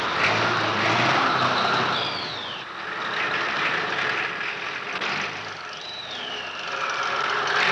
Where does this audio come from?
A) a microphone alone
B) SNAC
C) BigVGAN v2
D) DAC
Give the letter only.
A